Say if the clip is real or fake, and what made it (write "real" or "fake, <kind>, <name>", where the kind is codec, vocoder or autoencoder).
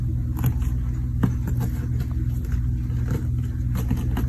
real